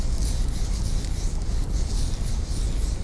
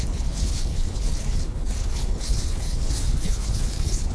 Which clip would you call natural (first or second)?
first